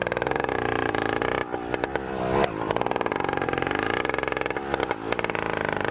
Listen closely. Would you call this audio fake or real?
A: real